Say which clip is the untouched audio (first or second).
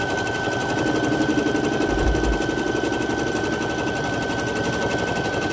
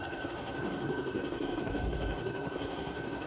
first